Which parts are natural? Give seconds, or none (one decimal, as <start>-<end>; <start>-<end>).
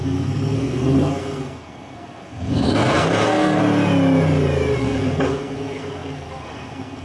3.6-4.8